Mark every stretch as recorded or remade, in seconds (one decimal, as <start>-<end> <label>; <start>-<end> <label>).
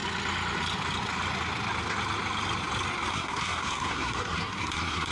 0.0-3.1 recorded; 3.1-5.1 remade